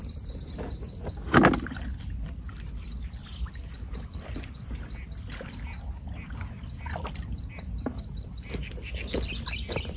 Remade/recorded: recorded